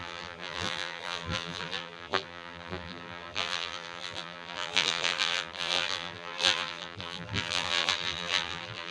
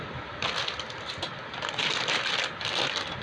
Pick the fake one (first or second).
first